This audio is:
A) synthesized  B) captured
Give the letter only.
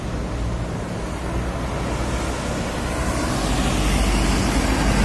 B